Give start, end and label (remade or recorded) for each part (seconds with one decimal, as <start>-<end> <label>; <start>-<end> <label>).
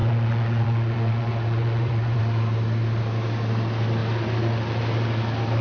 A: 0.0-2.2 remade; 2.2-5.6 recorded